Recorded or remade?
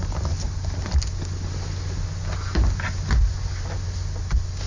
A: recorded